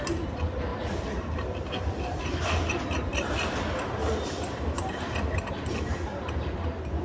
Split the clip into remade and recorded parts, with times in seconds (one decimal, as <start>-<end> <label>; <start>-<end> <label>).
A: 0.0-7.0 recorded